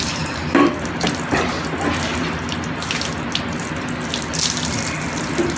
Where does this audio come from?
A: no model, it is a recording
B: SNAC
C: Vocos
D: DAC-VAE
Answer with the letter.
A